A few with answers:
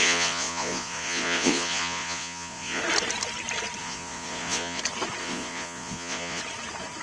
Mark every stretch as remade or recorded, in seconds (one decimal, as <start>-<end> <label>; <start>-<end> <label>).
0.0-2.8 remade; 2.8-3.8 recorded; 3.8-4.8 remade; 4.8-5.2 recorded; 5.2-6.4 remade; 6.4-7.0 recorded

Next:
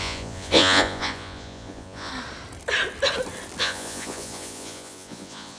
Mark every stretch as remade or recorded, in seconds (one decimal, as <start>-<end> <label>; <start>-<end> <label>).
0.0-2.1 remade; 2.1-3.6 recorded; 3.6-5.6 remade

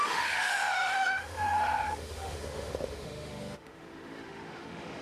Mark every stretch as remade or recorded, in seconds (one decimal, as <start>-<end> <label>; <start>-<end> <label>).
0.0-5.0 remade